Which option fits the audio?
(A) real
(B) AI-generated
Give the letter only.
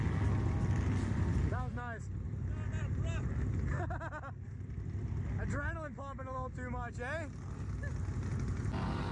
A